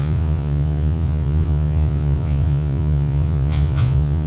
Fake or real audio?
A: fake